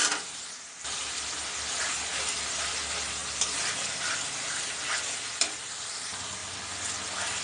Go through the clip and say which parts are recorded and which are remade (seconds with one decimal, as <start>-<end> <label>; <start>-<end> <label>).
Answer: 0.0-3.2 recorded; 3.2-4.1 remade; 4.1-6.4 recorded; 6.4-7.4 remade